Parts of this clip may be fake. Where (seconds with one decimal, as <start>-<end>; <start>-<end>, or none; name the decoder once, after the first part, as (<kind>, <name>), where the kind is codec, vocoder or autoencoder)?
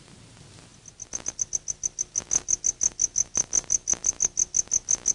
none